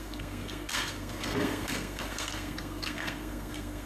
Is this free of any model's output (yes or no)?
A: no